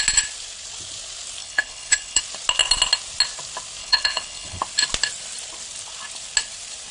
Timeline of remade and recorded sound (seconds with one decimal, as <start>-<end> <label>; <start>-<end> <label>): 0.0-1.4 recorded; 1.4-2.2 remade; 2.2-3.8 recorded; 3.8-4.6 remade; 4.6-6.9 recorded

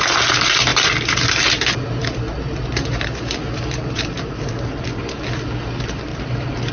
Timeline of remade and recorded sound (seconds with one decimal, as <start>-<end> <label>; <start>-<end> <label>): 0.0-0.7 recorded; 0.7-1.4 remade; 1.4-2.0 recorded; 2.0-5.2 remade; 5.2-6.1 recorded; 6.1-6.7 remade